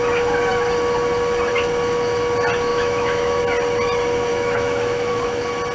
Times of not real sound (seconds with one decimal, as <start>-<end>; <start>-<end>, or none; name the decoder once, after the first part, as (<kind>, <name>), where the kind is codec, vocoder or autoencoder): 2.7-3.4 (autoencoder, DAC-VAE); 4.3-5.1